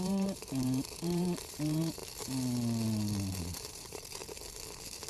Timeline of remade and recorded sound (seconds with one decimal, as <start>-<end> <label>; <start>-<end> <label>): 0.0-2.0 remade; 2.0-3.7 recorded; 3.7-4.2 remade; 4.2-5.1 recorded